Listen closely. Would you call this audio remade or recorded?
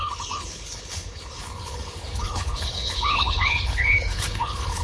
remade